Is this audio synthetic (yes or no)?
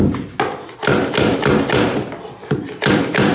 no